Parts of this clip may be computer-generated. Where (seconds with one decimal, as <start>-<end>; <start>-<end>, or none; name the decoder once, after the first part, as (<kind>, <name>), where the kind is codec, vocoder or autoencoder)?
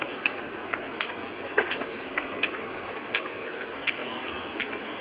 0.0-5.0 (codec, SNAC)